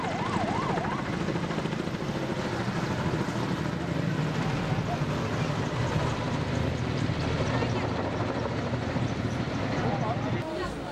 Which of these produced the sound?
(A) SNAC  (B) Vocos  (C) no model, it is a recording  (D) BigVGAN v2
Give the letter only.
C